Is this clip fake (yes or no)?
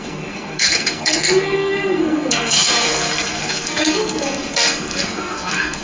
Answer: yes